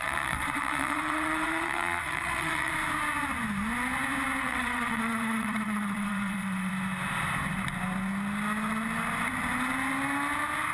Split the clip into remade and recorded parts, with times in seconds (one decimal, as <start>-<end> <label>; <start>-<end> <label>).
0.0-2.7 remade; 2.7-4.4 recorded; 4.4-6.7 remade; 6.7-10.7 recorded